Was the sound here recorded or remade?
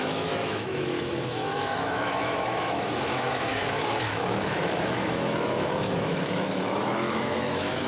remade